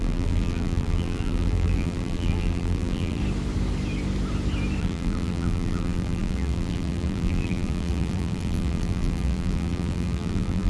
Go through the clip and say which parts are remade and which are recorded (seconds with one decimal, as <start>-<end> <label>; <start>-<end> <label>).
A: 0.0-3.2 remade; 3.2-4.8 recorded; 4.8-10.7 remade